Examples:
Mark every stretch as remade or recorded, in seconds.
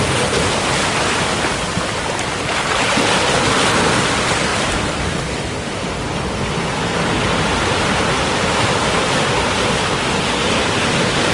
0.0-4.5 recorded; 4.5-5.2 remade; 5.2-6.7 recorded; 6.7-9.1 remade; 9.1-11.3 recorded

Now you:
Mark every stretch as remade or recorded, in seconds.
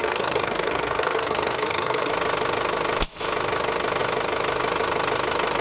0.0-2.1 remade; 2.1-5.6 recorded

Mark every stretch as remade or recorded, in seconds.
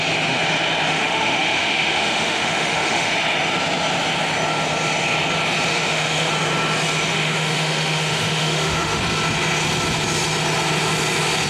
0.0-0.9 recorded; 0.9-3.1 remade; 3.1-5.7 recorded; 5.7-6.3 remade; 6.3-7.1 recorded; 7.1-9.0 remade; 9.0-11.5 recorded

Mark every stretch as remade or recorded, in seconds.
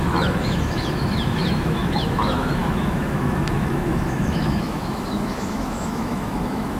0.0-6.8 remade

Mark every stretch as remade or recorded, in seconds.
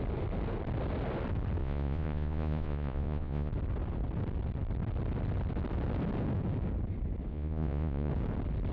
0.0-1.6 recorded; 1.6-3.5 remade; 3.5-7.3 recorded; 7.3-8.1 remade; 8.1-8.7 recorded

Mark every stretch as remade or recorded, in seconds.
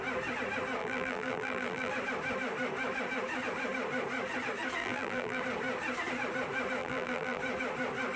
0.0-0.8 recorded; 0.8-1.9 remade; 1.9-4.8 recorded; 4.8-5.4 remade; 5.4-6.8 recorded; 6.8-7.4 remade; 7.4-8.2 recorded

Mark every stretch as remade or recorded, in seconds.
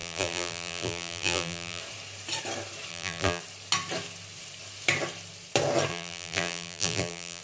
0.0-1.8 remade; 1.8-2.9 recorded; 2.9-3.4 remade; 3.4-5.9 recorded; 5.9-7.4 remade